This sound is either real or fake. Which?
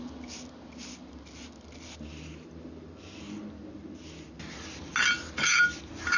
real